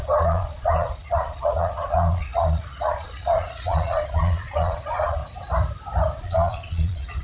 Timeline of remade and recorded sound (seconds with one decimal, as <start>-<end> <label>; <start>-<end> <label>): 0.0-5.2 remade; 5.2-6.2 recorded; 6.2-7.2 remade